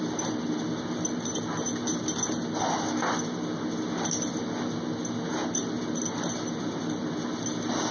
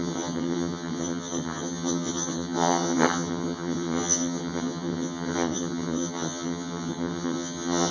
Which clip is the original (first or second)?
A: first